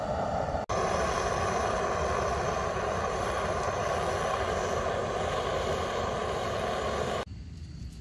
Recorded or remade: recorded